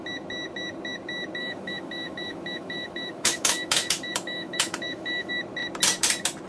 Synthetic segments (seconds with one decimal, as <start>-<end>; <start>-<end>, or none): 1.4-5.3